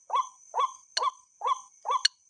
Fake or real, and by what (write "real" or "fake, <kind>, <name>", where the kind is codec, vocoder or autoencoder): real